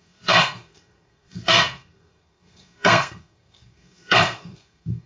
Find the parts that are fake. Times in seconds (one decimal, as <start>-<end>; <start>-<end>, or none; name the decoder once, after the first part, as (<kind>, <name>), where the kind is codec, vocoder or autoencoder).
0.0-5.1 (codec, SNAC)